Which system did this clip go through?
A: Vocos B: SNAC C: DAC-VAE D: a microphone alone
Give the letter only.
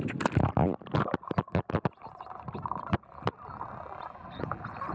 D